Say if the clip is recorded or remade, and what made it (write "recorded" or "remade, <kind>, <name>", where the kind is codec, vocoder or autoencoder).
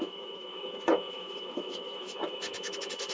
remade, autoencoder, DAC-VAE